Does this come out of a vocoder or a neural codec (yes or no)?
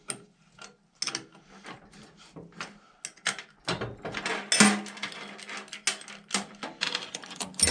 no